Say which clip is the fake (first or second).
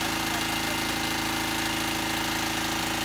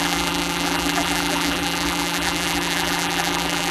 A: second